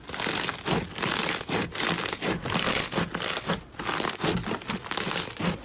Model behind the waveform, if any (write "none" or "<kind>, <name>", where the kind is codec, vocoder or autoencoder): none